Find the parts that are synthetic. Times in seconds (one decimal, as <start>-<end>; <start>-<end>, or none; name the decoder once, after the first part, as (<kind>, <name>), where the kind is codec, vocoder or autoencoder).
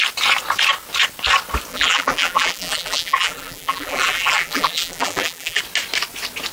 1.7-5.6 (vocoder, BigVGAN v2)